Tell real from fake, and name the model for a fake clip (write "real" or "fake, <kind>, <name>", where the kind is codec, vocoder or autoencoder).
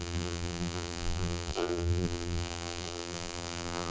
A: fake, vocoder, BigVGAN v2